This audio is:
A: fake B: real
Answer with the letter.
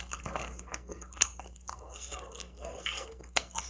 A